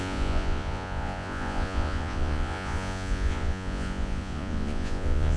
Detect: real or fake fake